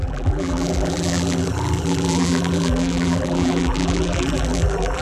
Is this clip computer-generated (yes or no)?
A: yes